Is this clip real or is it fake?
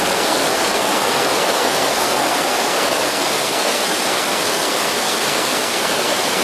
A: fake